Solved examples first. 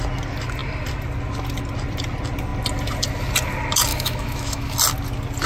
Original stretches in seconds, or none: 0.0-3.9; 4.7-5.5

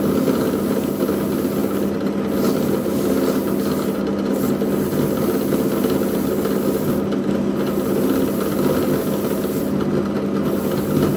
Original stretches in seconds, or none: 0.0-11.2